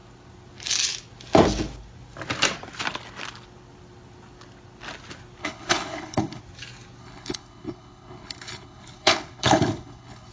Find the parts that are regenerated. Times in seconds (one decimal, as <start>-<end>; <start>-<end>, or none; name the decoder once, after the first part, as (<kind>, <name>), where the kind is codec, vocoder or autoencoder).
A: 5.4-6.4 (codec, HILCodec); 7.0-10.3